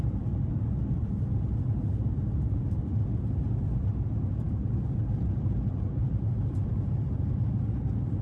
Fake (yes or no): yes